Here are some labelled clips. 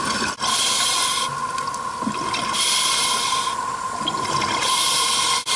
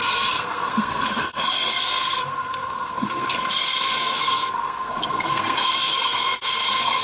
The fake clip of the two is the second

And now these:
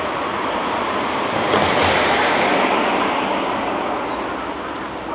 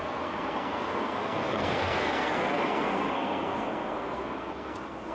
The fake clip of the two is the second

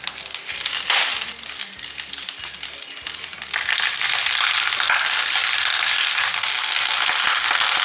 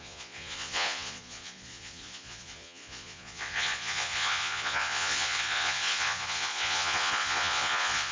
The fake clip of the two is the second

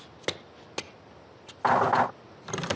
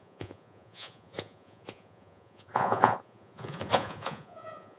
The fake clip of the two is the second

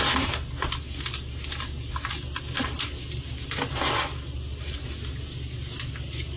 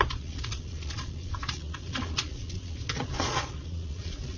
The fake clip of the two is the second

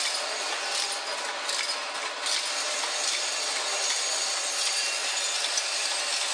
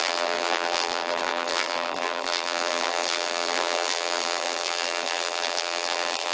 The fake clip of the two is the second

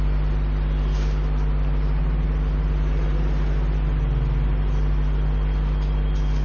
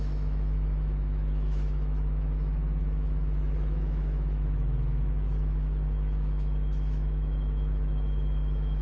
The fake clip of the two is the second